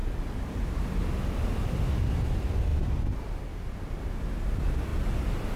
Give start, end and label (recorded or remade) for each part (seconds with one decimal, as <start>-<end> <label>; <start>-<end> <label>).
0.0-0.8 remade; 0.8-5.6 recorded